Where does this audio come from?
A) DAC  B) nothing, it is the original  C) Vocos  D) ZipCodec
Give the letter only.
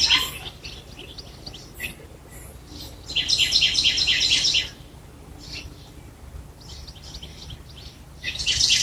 B